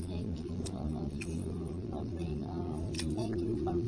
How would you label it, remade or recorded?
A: remade